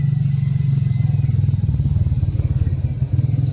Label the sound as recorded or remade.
recorded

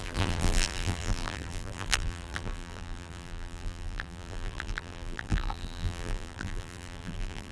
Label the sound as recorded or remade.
remade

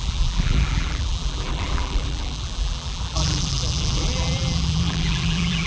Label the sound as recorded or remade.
remade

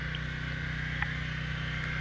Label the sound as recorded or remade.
recorded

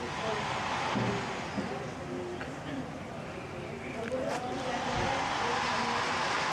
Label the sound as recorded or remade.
recorded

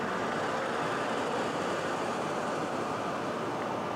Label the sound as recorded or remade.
recorded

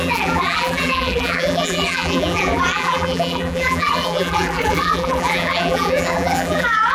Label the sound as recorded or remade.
remade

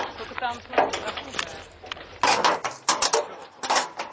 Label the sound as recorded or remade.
recorded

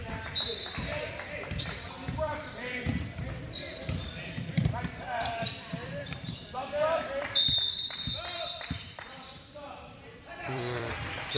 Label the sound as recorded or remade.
remade